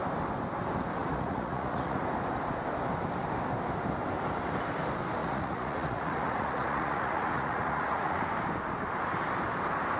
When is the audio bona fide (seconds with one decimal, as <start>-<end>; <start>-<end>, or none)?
0.0-1.0; 2.0-5.2; 8.2-10.0